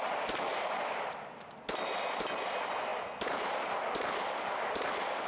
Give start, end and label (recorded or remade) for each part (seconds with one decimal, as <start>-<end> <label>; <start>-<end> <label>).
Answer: 0.0-5.3 recorded